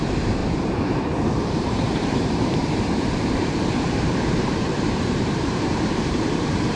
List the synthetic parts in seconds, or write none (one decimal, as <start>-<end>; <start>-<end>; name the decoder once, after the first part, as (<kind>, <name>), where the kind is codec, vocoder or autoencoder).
0.0-6.8 (vocoder, BigVGAN v2)